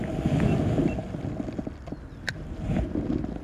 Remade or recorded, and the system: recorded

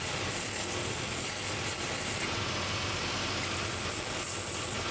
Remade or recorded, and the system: recorded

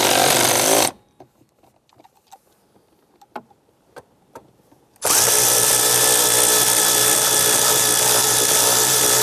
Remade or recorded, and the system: remade, vocoder, BigVGAN v2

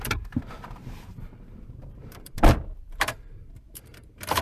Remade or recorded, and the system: remade, vocoder, BigVGAN v2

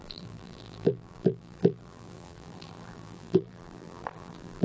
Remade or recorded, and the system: remade, vocoder, BigVGAN v2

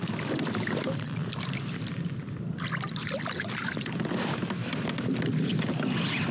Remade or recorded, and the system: remade, vocoder, BigVGAN v2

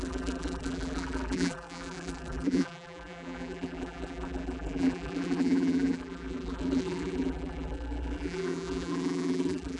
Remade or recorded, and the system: remade, vocoder, BigVGAN v2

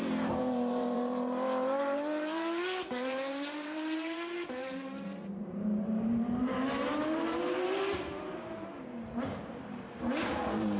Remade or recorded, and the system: remade, vocoder, BigVGAN v2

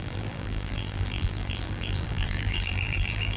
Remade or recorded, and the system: remade, vocoder, BigVGAN v2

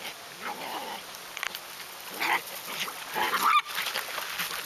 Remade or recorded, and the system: recorded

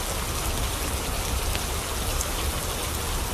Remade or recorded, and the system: recorded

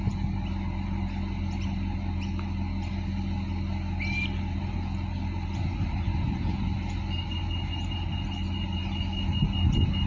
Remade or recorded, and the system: recorded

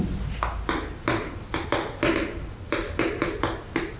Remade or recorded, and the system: recorded